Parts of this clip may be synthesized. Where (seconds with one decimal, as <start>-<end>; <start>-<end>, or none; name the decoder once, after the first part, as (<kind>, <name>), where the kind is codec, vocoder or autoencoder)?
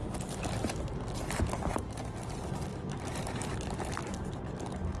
2.7-4.0 (vocoder, BigVGAN v2)